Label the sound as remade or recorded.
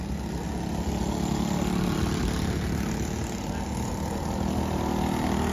recorded